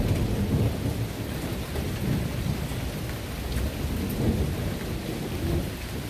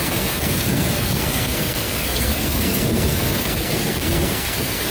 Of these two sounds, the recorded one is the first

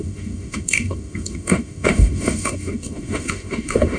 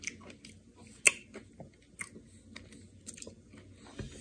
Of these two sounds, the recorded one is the second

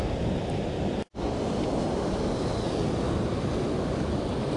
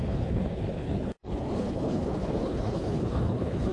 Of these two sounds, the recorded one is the first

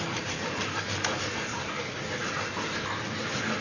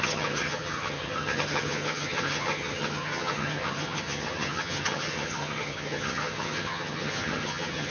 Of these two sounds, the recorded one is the first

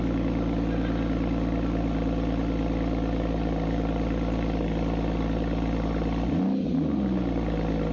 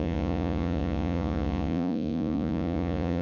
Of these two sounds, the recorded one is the first